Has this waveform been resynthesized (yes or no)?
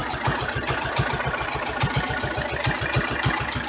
no